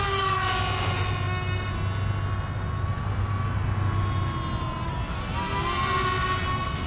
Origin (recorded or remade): recorded